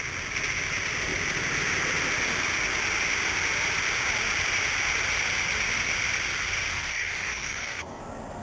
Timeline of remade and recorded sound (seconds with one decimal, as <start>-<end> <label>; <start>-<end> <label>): 0.0-6.7 recorded; 6.7-8.0 remade; 8.0-8.4 recorded